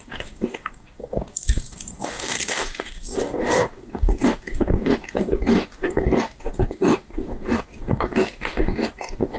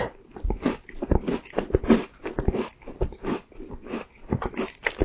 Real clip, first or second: second